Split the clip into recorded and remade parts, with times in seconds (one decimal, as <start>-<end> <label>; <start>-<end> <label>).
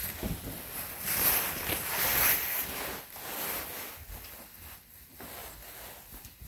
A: 0.0-6.5 recorded